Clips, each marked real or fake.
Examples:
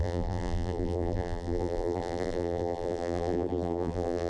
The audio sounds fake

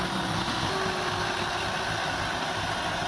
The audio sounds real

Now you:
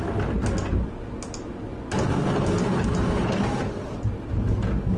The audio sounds real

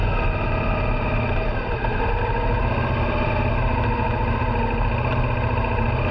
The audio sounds real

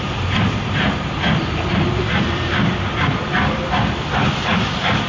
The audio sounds fake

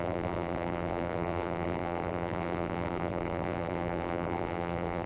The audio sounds fake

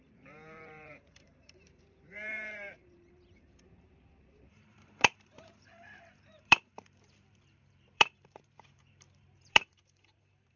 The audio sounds fake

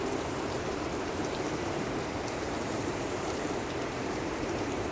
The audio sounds fake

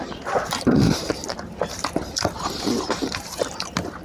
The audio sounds fake